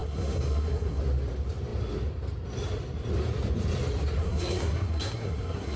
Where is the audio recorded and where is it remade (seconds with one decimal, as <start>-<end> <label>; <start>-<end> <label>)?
0.0-1.0 remade; 1.0-4.2 recorded; 4.2-5.8 remade